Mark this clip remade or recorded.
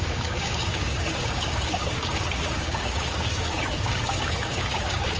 remade